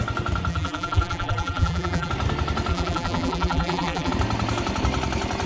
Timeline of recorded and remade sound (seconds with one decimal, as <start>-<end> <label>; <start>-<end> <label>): 0.0-0.5 recorded; 0.5-2.1 remade; 2.1-2.7 recorded; 2.7-4.1 remade; 4.1-5.5 recorded